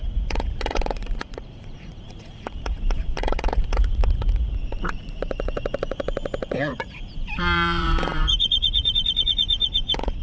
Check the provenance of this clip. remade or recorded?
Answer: remade